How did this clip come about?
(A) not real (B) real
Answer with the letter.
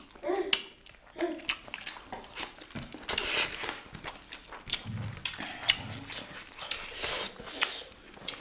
B